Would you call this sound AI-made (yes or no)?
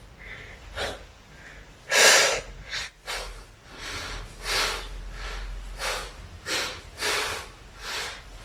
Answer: no